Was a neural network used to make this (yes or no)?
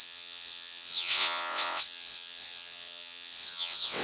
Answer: yes